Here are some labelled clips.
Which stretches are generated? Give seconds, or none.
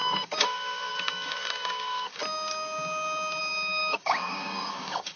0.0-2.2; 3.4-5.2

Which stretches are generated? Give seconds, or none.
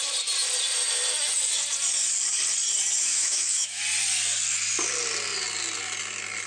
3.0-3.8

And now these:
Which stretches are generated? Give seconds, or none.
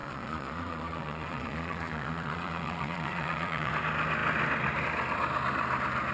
0.0-3.7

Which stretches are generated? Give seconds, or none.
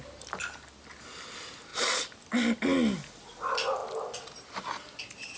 none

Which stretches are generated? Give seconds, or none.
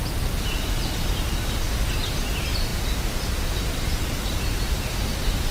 none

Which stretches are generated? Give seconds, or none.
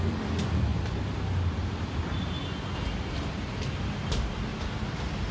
0.0-4.5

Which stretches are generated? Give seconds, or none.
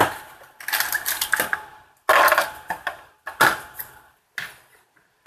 none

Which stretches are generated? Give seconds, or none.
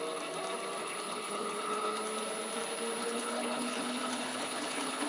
0.8-2.0; 3.0-5.1